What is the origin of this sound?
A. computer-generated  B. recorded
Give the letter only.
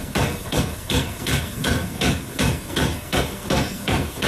A